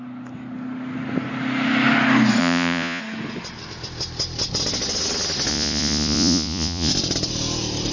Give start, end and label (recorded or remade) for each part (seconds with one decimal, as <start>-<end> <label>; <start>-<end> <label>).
0.0-2.4 recorded; 2.4-3.0 remade; 3.0-5.5 recorded; 5.5-6.9 remade; 6.9-7.9 recorded